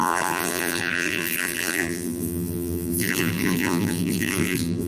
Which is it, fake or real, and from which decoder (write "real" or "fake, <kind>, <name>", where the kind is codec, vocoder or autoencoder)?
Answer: fake, vocoder, BigVGAN v2